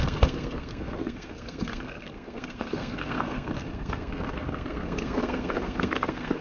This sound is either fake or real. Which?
fake